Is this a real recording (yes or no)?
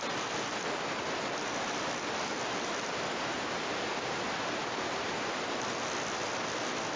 yes